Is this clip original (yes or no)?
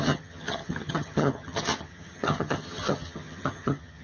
no